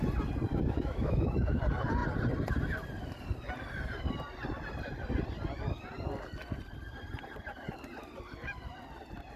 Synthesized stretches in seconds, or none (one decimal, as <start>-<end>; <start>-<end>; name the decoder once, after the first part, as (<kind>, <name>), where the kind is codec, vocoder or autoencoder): 0.5-1.6 (autoencoder, DAC-VAE)

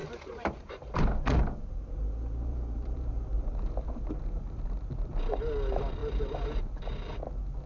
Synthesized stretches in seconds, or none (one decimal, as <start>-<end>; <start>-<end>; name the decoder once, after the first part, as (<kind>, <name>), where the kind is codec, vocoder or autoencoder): 0.0-4.6 (vocoder, BigVGAN v2); 6.0-6.8

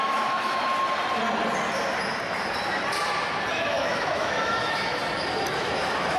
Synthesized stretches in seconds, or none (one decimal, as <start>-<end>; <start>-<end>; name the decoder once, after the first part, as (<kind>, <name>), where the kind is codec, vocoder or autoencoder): 0.0-0.7 (autoencoder, DAC-VAE); 3.6-5.0; 5.6-6.2

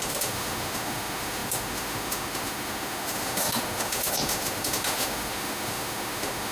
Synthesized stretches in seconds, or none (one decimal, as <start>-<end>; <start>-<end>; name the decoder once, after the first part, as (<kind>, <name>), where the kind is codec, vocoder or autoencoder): 0.0-6.5 (autoencoder, DAC-VAE)

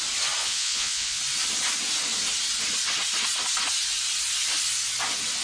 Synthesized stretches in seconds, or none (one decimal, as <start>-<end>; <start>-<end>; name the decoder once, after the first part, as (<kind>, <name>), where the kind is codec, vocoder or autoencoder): 0.4-1.2 (vocoder, Vocos)

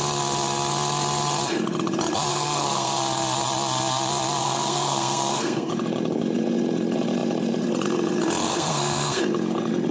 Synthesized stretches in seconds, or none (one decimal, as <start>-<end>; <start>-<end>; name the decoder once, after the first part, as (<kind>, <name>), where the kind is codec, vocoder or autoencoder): 2.3-3.0 (codec, SNAC); 4.4-5.7; 8.4-9.2